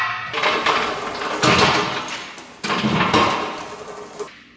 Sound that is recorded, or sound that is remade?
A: recorded